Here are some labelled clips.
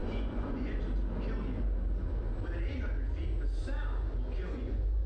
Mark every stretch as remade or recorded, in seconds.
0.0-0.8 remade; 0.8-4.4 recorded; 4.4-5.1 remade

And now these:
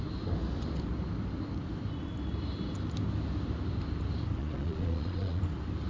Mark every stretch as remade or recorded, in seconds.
0.0-4.4 recorded; 4.4-5.4 remade; 5.4-5.9 recorded

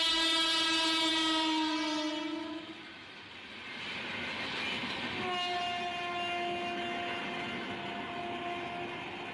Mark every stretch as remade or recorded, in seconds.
0.0-9.3 recorded

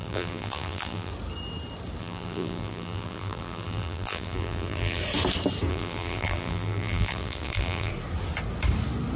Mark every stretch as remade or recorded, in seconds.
0.0-1.1 remade; 1.1-2.0 recorded; 2.0-5.0 remade; 5.0-5.7 recorded; 5.7-7.9 remade; 7.9-9.2 recorded

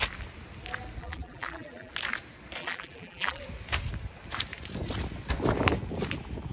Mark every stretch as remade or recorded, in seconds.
0.0-1.0 recorded; 1.0-1.9 remade; 1.9-2.6 recorded; 2.6-3.4 remade; 3.4-6.5 recorded

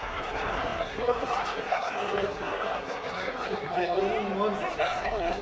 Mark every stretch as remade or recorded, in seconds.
0.0-4.0 remade; 4.0-4.8 recorded; 4.8-5.4 remade